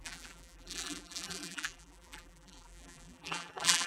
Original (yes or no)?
no